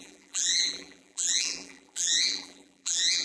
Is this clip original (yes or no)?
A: no